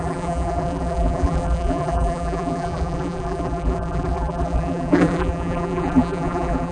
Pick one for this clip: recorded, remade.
remade